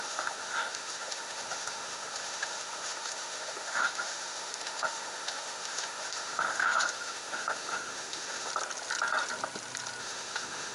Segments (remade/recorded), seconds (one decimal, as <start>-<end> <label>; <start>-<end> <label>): 0.0-8.5 remade; 8.5-10.0 recorded; 10.0-10.7 remade